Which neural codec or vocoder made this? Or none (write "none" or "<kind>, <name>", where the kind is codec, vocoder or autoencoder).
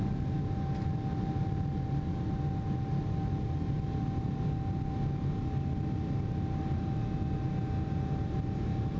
none